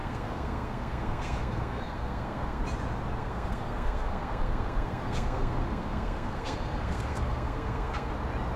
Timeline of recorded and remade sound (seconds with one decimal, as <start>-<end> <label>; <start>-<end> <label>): 0.0-2.6 remade; 2.6-3.2 recorded; 3.2-8.1 remade; 8.1-8.6 recorded